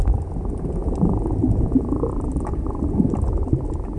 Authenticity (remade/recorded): recorded